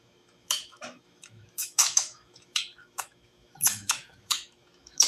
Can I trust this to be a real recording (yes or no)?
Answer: no